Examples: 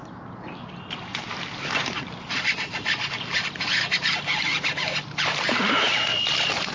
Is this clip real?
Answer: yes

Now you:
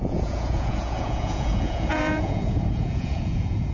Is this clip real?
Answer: no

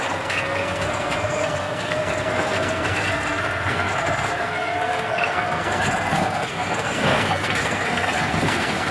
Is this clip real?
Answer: no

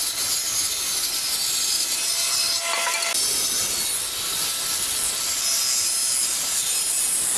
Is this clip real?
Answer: yes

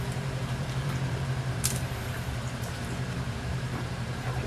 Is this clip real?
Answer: no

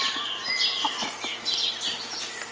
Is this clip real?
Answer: yes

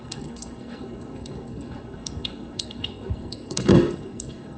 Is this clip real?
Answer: no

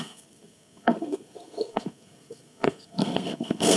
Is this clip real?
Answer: no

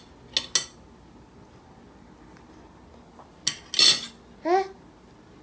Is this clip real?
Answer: yes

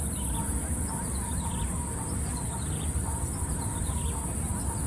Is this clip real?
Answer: yes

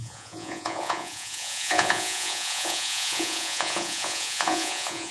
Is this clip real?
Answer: no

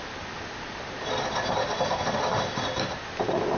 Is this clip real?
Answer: yes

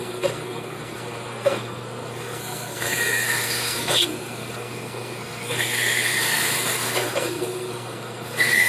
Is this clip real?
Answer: no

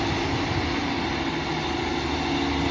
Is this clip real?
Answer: yes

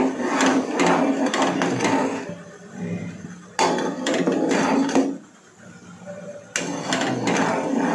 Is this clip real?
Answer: yes